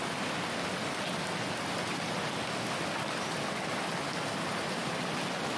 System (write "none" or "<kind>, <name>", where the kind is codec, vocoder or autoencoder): none